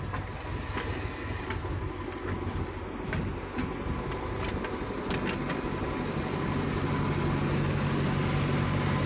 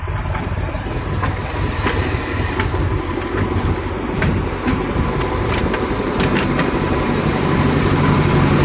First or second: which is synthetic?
second